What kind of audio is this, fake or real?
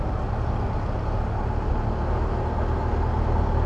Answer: real